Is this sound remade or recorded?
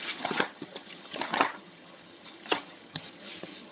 remade